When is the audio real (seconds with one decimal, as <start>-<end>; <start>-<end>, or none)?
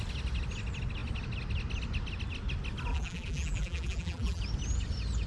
0.0-2.9; 4.4-5.3